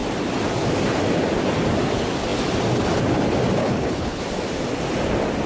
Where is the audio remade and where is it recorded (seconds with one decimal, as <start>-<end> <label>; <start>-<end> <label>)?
0.0-3.6 recorded; 3.6-4.2 remade; 4.2-5.5 recorded